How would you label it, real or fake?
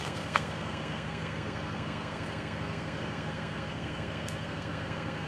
fake